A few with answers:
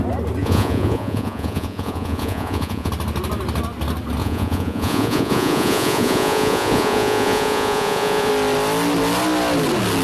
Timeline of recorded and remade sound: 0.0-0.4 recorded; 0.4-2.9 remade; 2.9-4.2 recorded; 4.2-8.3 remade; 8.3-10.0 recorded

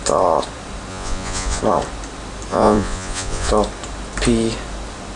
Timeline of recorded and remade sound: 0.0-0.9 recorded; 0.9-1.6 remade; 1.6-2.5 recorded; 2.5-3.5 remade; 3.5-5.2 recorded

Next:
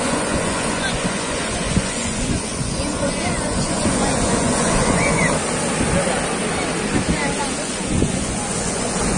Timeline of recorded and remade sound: 0.0-5.2 remade; 5.2-7.6 recorded; 7.6-9.2 remade

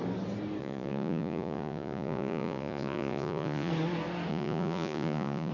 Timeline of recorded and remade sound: 0.0-0.6 recorded; 0.6-3.7 remade; 3.7-4.3 recorded; 4.3-5.5 remade